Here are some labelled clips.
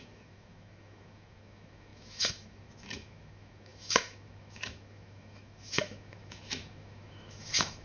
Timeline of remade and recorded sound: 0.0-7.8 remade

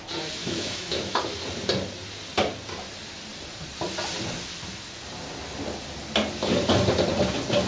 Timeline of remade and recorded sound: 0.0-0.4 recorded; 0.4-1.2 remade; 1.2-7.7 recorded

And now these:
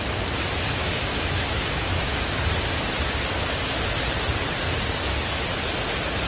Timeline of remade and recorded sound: 0.0-0.8 recorded; 0.8-2.1 remade; 2.1-6.3 recorded

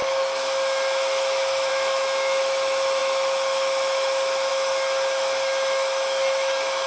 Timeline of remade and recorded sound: 0.0-6.9 remade